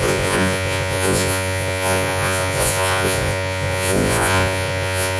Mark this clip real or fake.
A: fake